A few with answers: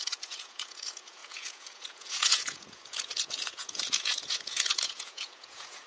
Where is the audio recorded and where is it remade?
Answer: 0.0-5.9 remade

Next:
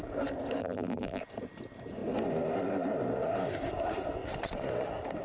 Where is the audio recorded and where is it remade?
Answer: 0.0-0.6 recorded; 0.6-1.2 remade; 1.2-5.2 recorded

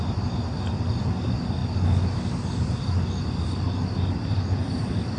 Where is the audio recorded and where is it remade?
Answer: 0.0-5.2 recorded